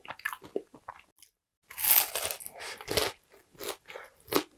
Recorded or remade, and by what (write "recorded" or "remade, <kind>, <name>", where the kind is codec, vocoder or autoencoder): recorded